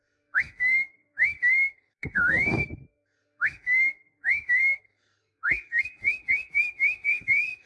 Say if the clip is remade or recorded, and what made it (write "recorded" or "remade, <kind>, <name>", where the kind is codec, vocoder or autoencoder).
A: remade, codec, SNAC